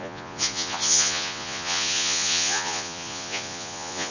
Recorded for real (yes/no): no